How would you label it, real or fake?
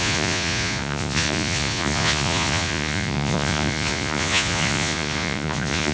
fake